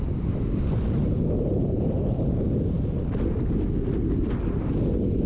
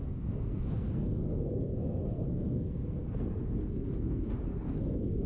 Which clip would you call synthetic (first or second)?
second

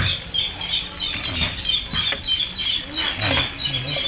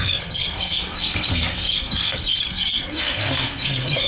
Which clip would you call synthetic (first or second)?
second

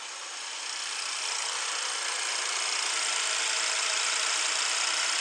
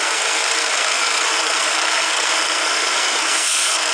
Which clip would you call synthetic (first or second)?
second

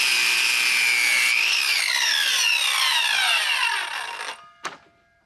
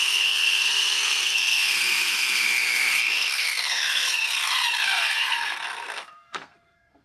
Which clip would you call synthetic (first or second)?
second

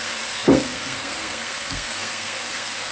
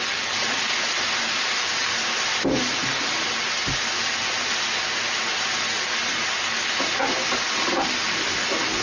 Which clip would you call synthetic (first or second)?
first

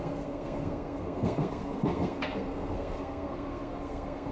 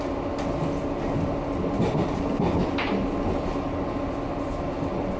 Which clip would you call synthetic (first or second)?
first